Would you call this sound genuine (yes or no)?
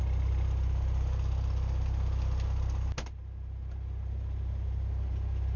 yes